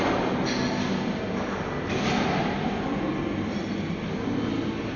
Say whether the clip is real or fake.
real